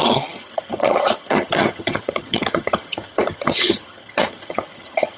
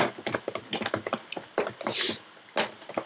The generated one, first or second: first